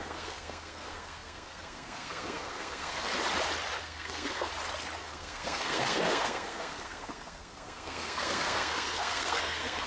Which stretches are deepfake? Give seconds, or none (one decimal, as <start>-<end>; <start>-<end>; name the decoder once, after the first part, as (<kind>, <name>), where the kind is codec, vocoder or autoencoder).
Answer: 0.0-3.1 (codec, SNAC); 3.8-4.5; 5.0-9.9